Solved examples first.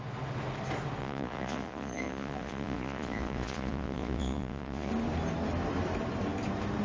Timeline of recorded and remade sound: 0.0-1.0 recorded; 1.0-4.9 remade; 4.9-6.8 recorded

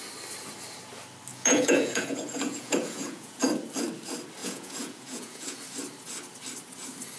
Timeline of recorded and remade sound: 0.0-1.3 recorded; 1.3-3.4 remade; 3.4-4.4 recorded; 4.4-5.6 remade; 5.6-7.2 recorded

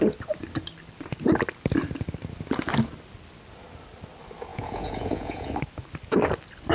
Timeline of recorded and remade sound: 0.0-4.5 recorded; 4.5-5.5 remade; 5.5-6.7 recorded

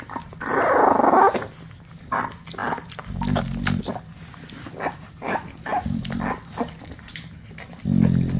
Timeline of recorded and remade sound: 0.0-8.4 recorded

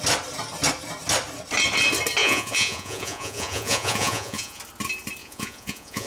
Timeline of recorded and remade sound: 0.0-2.2 recorded; 2.2-4.6 remade; 4.6-5.2 recorded; 5.2-6.1 remade

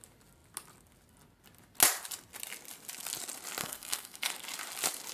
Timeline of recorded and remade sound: 0.0-3.6 recorded; 3.6-4.3 remade; 4.3-5.1 recorded